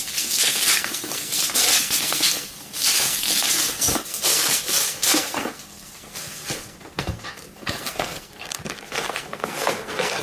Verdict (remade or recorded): remade